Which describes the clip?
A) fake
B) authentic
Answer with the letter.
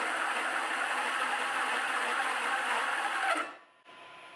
B